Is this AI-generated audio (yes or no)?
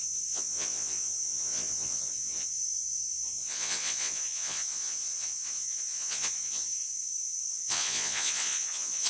yes